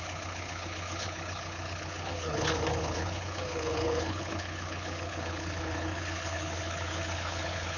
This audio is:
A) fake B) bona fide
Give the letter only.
A